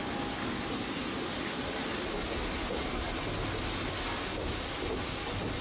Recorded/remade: recorded